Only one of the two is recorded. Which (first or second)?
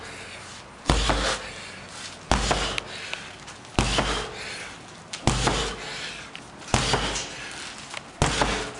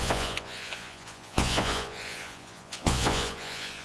first